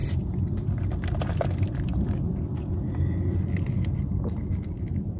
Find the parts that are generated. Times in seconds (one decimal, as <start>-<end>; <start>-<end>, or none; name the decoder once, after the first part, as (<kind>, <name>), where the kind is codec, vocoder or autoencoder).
0.0-3.1 (vocoder, BigVGAN v2)